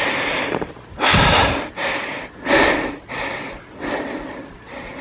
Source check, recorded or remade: recorded